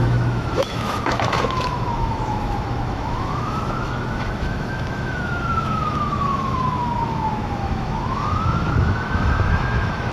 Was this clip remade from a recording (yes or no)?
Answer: yes